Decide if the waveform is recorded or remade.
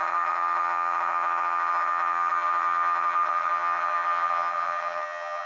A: remade